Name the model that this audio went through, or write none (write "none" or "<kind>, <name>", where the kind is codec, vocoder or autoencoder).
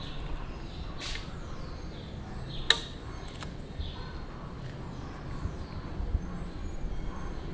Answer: none